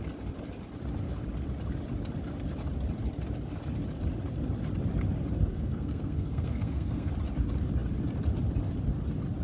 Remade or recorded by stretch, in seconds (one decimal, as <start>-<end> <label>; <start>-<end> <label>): 0.0-5.5 recorded; 5.5-7.1 remade; 7.1-9.4 recorded